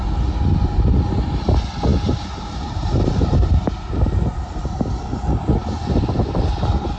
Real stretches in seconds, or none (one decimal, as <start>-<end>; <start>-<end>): 0.0-1.9; 4.4-7.0